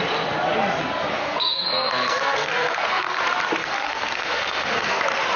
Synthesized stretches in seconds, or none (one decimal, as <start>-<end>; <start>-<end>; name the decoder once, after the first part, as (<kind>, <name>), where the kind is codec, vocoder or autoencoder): 1.2-3.2 (codec, SNAC); 3.6-5.0